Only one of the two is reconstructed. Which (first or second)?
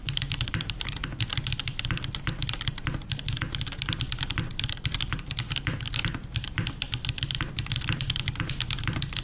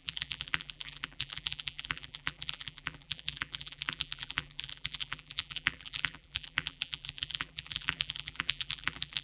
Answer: second